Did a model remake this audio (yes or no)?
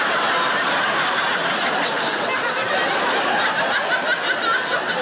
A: no